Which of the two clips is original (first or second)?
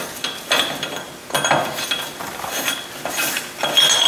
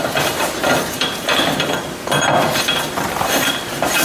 first